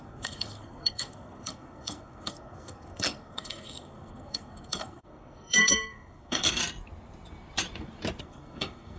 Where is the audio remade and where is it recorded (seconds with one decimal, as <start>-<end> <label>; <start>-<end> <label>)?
0.0-6.6 remade; 6.6-8.2 recorded; 8.2-9.0 remade